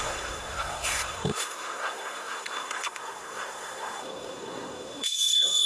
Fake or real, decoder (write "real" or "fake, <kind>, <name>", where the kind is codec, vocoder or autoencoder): fake, codec, SNAC